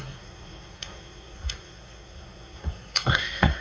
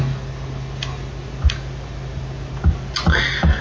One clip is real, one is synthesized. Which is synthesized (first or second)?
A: first